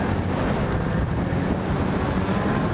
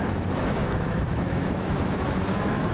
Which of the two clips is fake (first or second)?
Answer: second